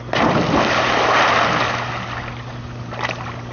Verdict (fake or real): real